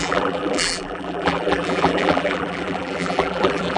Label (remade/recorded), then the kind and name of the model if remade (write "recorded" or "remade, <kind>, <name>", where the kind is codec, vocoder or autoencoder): remade, vocoder, BigVGAN v2